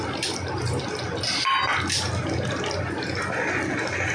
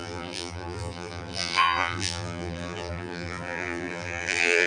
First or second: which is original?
first